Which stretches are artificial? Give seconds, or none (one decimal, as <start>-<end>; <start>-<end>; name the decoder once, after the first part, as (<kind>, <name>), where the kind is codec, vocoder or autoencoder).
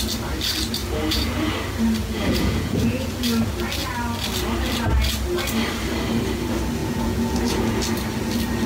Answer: 0.8-1.5 (vocoder, Vocos); 2.0-3.1; 6.8-7.8